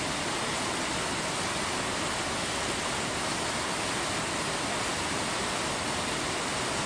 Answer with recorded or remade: recorded